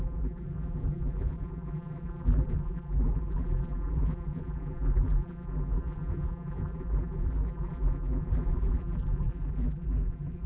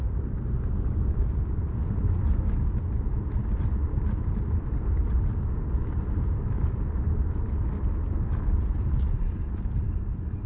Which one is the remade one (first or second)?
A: first